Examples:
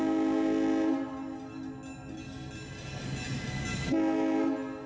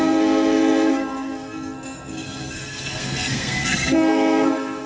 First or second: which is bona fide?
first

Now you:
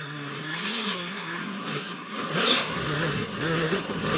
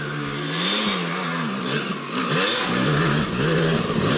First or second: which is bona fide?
second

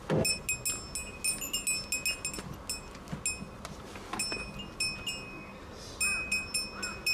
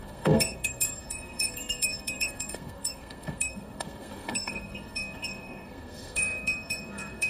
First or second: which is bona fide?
first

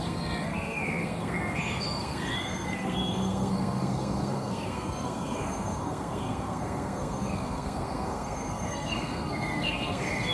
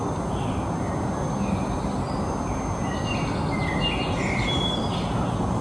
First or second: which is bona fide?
second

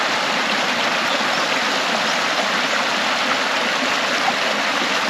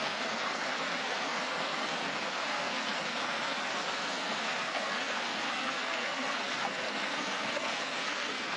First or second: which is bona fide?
first